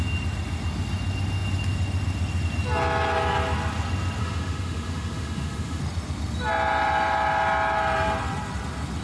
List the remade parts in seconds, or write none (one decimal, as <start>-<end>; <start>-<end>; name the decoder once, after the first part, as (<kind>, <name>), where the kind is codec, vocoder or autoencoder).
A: 4.2-5.8 (autoencoder, DAC-VAE)